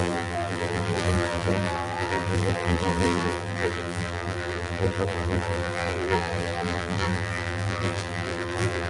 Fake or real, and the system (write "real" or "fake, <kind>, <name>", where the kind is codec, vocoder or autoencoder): fake, vocoder, BigVGAN v2